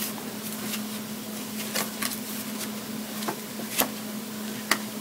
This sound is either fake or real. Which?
real